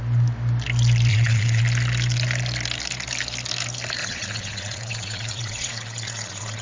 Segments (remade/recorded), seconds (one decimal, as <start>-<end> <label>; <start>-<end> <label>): 0.0-1.1 recorded; 1.1-1.6 remade; 1.6-4.0 recorded; 4.0-6.6 remade